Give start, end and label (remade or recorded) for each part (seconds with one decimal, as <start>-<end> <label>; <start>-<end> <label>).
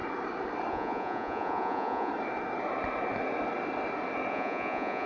0.0-0.7 recorded; 0.7-2.1 remade; 2.1-4.3 recorded; 4.3-5.1 remade